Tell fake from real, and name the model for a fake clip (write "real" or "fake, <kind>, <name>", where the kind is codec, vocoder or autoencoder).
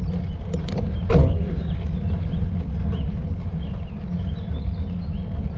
real